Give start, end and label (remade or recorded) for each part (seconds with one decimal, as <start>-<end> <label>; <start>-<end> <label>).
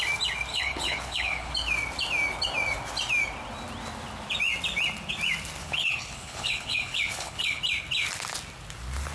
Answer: 0.0-0.5 recorded; 0.5-1.5 remade; 1.5-5.6 recorded; 5.6-7.6 remade; 7.6-9.1 recorded